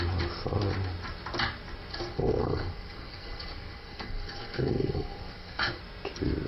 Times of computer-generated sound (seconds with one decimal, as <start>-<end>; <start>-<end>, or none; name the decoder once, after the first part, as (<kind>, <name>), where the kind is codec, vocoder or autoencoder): 1.9-5.8 (codec, SNAC)